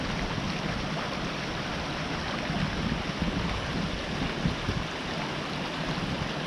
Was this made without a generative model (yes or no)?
yes